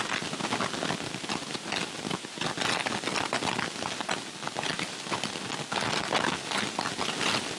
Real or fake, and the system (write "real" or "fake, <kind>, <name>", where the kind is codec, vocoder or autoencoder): real